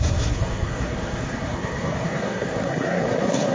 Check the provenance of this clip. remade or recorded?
remade